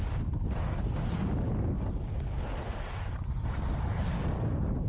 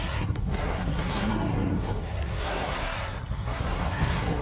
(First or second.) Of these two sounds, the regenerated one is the second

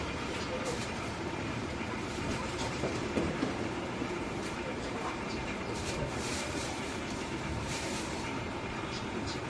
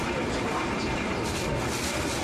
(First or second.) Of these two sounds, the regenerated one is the first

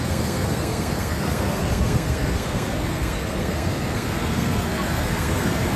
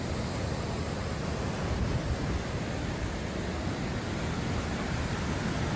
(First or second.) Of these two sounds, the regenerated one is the first